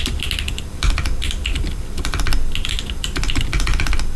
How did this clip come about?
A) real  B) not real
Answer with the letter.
A